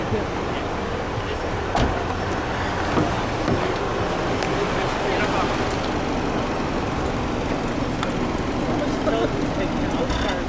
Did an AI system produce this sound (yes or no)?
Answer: no